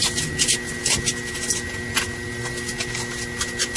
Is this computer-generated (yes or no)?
no